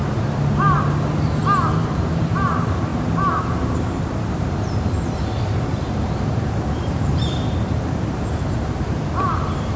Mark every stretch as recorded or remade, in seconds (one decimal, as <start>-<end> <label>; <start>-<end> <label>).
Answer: 0.0-1.4 remade; 1.4-1.9 recorded; 1.9-9.8 remade